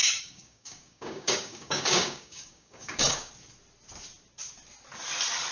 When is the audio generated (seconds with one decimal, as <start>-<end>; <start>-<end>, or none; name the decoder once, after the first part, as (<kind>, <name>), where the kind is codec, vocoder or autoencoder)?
0.0-3.3 (codec, DAC)